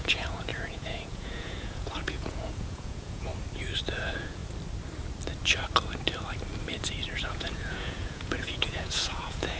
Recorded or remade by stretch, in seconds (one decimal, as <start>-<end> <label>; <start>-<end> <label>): 0.0-3.3 remade; 3.3-4.0 recorded; 4.0-4.4 remade; 4.4-7.2 recorded; 7.2-9.6 remade